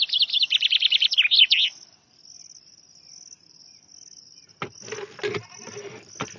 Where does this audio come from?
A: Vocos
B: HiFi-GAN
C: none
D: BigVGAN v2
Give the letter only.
C